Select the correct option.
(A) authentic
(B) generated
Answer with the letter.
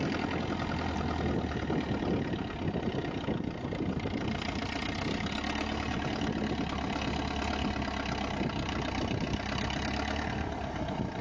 A